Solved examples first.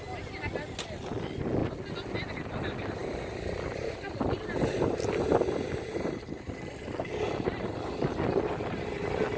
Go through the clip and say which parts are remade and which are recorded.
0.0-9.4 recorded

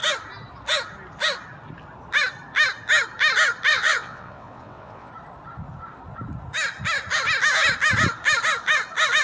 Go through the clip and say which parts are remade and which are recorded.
0.0-3.7 recorded; 3.7-5.1 remade; 5.1-9.2 recorded